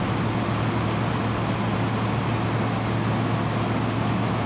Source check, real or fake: real